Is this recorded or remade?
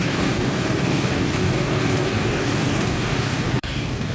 remade